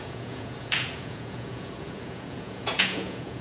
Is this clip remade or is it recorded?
remade